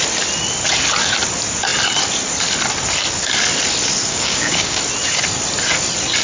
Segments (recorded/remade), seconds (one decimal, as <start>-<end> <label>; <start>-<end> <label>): 0.0-4.1 recorded; 4.1-4.8 remade; 4.8-6.2 recorded